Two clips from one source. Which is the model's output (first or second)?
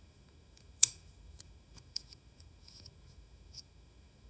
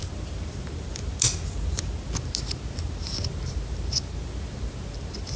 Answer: first